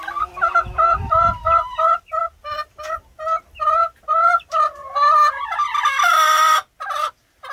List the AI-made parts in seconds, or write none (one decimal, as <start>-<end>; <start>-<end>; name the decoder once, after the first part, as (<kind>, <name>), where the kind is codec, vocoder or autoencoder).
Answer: none